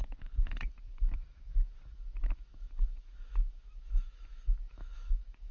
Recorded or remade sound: remade